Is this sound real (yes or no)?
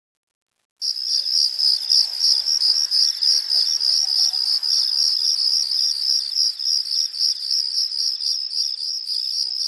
yes